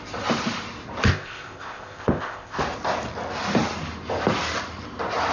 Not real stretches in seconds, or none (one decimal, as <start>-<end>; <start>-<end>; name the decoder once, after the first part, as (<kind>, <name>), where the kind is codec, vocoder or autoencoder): 1.1-2.6 (codec, ZipCodec)